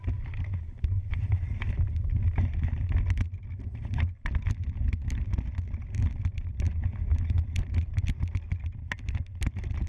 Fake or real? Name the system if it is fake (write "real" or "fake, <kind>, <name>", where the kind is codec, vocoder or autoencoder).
real